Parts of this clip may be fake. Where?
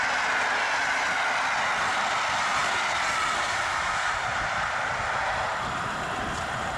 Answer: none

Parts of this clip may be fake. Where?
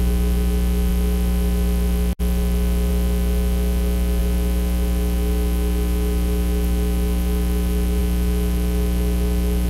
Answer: none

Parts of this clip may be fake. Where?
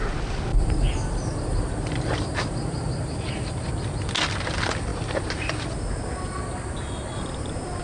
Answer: 0.5-3.7; 4.9-5.5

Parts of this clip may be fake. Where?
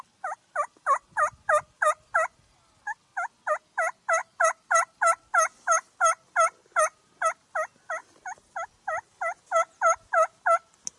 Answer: 4.2-5.0; 8.0-8.5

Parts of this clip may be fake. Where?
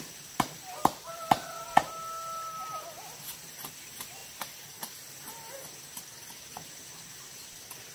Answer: none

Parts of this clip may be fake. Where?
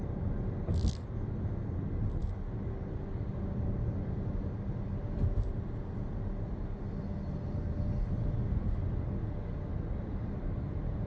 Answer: none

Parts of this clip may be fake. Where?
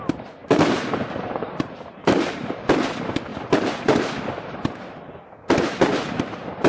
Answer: 0.4-2.5; 3.3-6.2